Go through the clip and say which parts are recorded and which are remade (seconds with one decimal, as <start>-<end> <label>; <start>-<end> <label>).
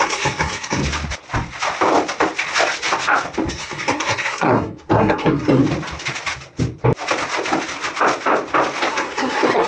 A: 0.0-0.8 remade; 0.8-3.5 recorded; 3.5-5.6 remade; 5.6-8.9 recorded; 8.9-9.7 remade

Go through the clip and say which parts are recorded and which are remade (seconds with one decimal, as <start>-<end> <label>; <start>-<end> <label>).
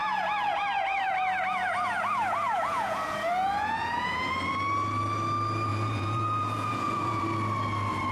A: 0.0-4.3 remade; 4.3-5.7 recorded; 5.7-7.2 remade; 7.2-8.1 recorded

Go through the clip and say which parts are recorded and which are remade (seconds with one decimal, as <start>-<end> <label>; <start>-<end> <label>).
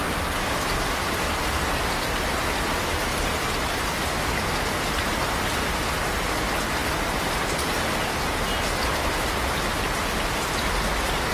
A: 0.0-11.3 recorded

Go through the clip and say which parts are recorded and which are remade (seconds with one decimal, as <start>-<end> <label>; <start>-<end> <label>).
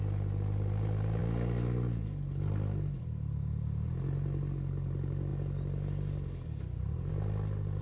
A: 0.0-7.8 recorded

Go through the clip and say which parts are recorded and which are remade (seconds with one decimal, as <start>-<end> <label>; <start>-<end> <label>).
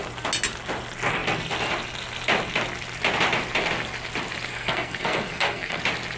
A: 0.0-4.5 recorded; 4.5-5.8 remade; 5.8-6.2 recorded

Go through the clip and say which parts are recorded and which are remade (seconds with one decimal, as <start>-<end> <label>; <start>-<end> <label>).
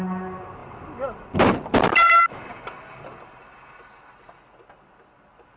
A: 0.0-5.6 recorded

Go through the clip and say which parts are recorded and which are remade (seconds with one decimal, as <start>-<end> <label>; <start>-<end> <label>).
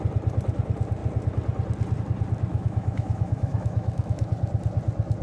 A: 0.0-2.5 recorded; 2.5-4.3 remade; 4.3-5.2 recorded